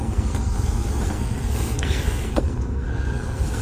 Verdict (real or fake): fake